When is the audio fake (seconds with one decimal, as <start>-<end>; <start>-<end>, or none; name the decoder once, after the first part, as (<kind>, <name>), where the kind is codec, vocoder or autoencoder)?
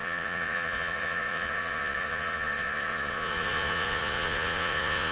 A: 0.0-5.1 (vocoder, Vocos)